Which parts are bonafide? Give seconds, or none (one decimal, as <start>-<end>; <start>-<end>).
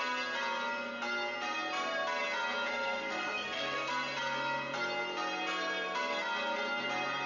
0.0-2.7; 3.9-7.3